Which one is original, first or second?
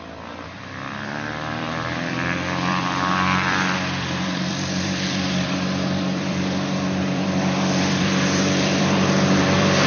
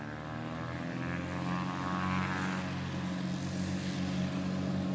second